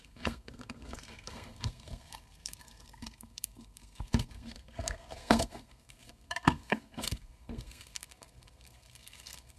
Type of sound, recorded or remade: remade